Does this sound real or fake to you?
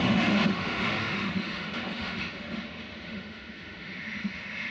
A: fake